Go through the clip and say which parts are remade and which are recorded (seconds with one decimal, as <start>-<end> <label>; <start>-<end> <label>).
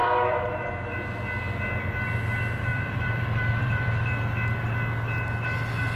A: 0.0-0.7 remade; 0.7-2.7 recorded; 2.7-4.1 remade; 4.1-6.0 recorded